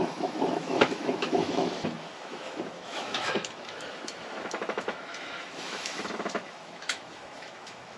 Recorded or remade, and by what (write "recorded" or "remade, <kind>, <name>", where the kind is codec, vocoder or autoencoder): remade, autoencoder, DAC-VAE